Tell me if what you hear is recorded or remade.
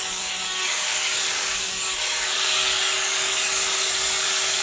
remade